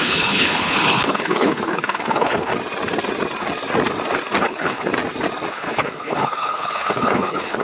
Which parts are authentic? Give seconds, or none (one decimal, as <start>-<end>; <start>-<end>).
2.5-4.4; 4.9-5.5

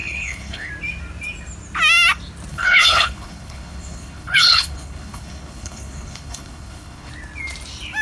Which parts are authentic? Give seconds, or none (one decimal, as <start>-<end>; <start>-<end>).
0.7-2.5; 7.1-8.0

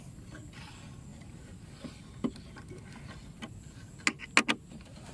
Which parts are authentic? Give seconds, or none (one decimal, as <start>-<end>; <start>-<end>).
0.0-5.1

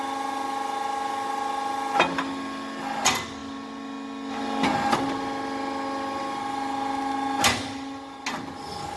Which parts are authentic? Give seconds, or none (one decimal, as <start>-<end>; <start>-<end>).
0.0-9.0

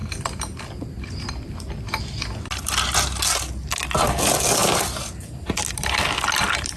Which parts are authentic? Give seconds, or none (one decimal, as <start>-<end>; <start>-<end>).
0.0-6.8